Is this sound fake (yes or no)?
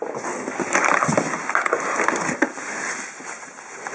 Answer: no